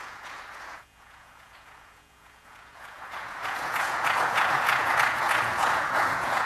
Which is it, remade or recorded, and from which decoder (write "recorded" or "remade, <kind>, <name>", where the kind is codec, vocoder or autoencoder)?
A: remade, vocoder, Vocos